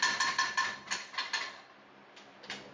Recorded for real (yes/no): yes